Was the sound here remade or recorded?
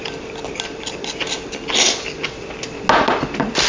recorded